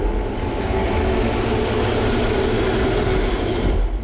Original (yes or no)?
yes